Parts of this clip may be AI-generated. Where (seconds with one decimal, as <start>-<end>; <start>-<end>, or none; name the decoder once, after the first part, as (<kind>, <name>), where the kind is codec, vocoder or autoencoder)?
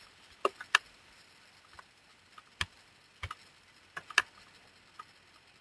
none